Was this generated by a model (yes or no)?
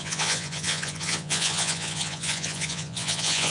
yes